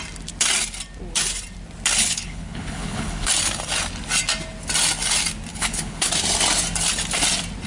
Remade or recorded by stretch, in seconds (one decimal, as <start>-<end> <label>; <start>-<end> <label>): 0.0-2.0 recorded; 2.0-3.3 remade; 3.3-5.5 recorded; 5.5-6.1 remade; 6.1-7.7 recorded

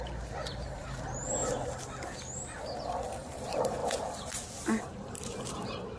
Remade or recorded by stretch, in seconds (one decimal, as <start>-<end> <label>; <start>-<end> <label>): 0.0-1.4 remade; 1.4-3.1 recorded; 3.1-3.8 remade; 3.8-4.8 recorded; 4.8-6.0 remade

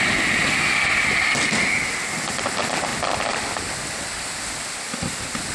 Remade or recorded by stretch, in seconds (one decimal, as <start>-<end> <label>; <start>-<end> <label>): 0.0-5.5 recorded

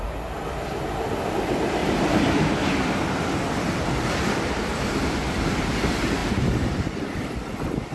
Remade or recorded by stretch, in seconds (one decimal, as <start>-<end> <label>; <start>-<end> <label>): 0.0-7.9 recorded

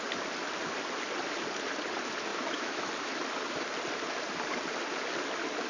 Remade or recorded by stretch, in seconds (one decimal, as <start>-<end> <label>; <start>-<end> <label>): 0.0-2.3 recorded; 2.3-2.9 remade; 2.9-5.7 recorded

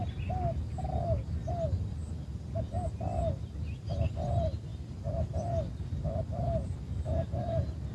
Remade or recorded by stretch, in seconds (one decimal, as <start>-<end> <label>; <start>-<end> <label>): 0.0-7.9 recorded

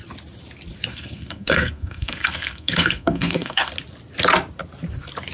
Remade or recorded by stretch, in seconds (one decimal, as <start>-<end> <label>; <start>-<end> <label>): 0.0-0.9 recorded; 0.9-3.7 remade; 3.7-5.3 recorded